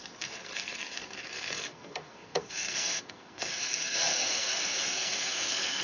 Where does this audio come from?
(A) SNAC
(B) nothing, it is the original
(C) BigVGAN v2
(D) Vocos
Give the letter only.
A